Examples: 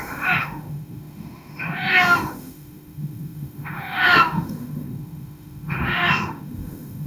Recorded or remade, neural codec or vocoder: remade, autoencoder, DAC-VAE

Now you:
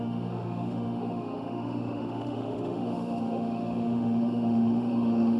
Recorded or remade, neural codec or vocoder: remade, autoencoder, DAC-VAE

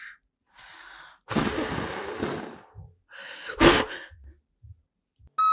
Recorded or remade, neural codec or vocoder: recorded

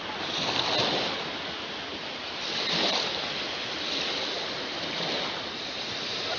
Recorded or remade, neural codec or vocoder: recorded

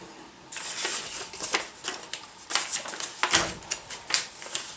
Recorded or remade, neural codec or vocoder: recorded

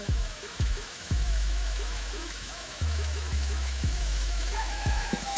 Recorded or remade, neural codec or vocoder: remade, autoencoder, DAC-VAE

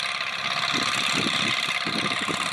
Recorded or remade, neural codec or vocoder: recorded